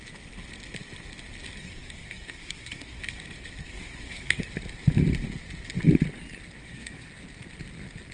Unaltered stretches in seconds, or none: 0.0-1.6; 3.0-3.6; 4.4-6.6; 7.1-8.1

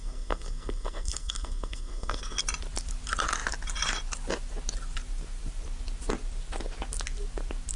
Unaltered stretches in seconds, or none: 2.4-7.8

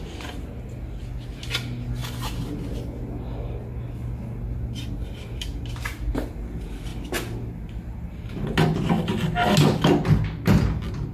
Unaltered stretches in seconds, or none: 0.0-11.1

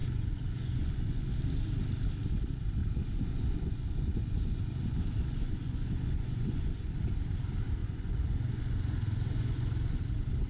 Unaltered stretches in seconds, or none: 1.3-2.8; 6.9-7.8; 10.0-10.5

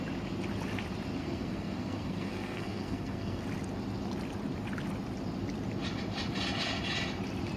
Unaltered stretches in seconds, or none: 0.0-1.2; 3.4-7.6

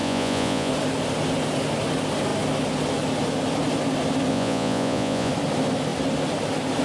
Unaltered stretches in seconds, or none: 0.7-4.3; 5.3-6.8